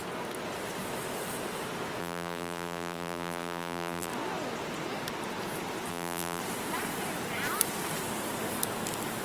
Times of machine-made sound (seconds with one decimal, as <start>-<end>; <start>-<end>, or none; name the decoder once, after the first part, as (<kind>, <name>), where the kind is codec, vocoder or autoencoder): 2.0-4.1 (vocoder, BigVGAN v2); 5.9-6.4